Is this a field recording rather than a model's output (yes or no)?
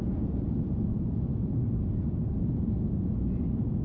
no